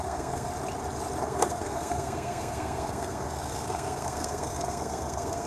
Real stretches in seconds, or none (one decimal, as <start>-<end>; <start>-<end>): 0.5-1.2